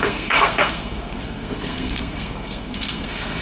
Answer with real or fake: fake